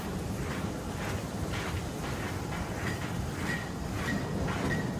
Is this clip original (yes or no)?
yes